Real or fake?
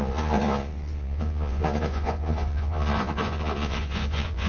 fake